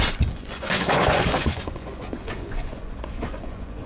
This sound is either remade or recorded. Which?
remade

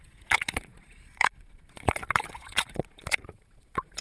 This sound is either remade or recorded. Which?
remade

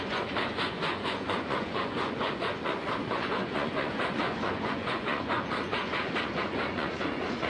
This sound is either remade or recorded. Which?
remade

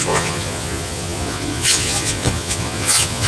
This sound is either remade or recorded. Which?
remade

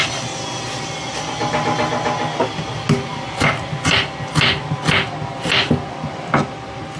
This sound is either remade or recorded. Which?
recorded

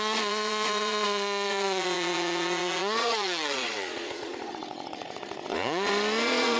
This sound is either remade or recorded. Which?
remade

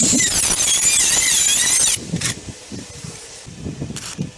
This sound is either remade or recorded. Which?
recorded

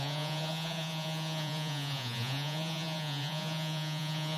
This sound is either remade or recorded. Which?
remade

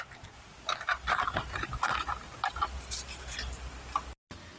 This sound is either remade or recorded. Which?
recorded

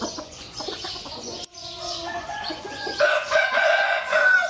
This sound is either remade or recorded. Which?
remade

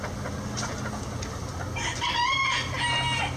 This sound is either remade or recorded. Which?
recorded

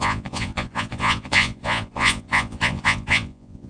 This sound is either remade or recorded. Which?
remade